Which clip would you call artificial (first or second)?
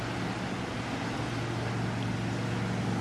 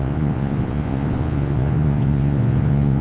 second